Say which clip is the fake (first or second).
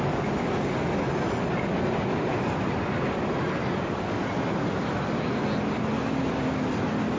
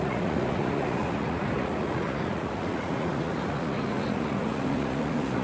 second